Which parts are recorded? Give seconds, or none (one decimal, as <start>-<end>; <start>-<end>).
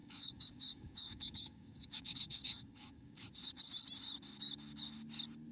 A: 3.3-5.5